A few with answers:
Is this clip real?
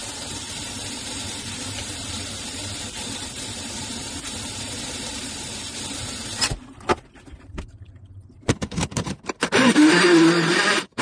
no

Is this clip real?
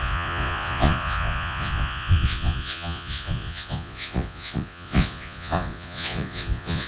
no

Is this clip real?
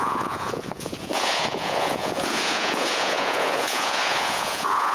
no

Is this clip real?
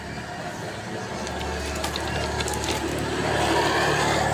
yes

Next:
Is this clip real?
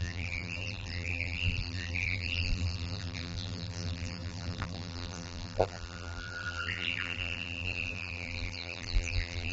no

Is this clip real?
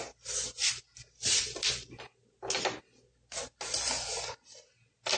yes